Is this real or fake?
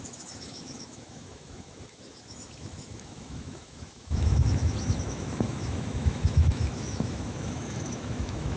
fake